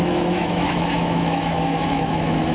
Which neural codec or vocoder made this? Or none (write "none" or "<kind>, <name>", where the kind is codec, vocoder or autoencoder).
autoencoder, DAC-VAE